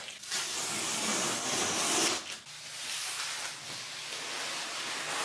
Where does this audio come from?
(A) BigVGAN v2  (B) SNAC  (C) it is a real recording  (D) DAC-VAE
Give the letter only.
C